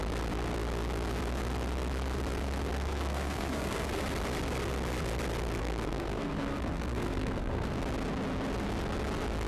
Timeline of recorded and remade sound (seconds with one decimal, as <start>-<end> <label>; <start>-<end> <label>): 0.0-2.7 recorded; 2.7-4.0 remade; 4.0-5.6 recorded; 5.6-7.7 remade; 7.7-9.5 recorded